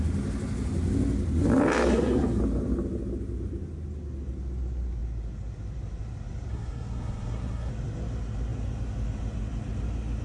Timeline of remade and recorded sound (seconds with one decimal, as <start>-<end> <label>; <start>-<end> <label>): 0.0-1.9 recorded; 1.9-2.4 remade; 2.4-6.5 recorded; 6.5-7.7 remade; 7.7-10.2 recorded